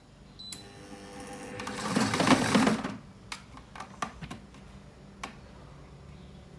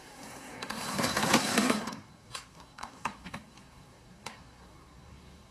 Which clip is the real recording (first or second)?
first